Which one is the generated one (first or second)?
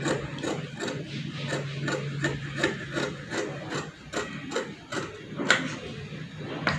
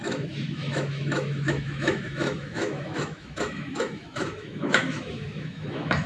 second